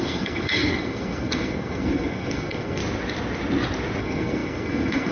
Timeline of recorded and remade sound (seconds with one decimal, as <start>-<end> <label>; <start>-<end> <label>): 0.0-2.8 remade; 2.8-4.0 recorded; 4.0-5.1 remade